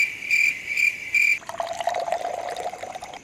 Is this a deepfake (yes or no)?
no